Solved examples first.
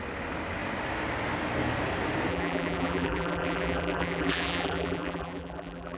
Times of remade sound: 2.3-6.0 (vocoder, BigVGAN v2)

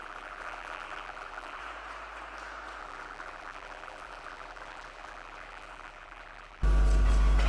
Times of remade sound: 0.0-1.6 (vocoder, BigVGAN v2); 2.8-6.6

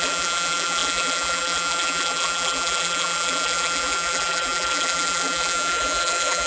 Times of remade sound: 0.0-6.5 (vocoder, BigVGAN v2)